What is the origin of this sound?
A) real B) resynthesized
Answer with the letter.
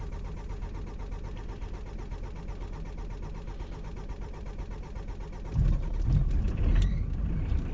A